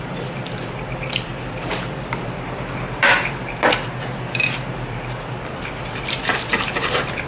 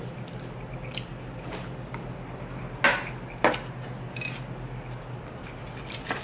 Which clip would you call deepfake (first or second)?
first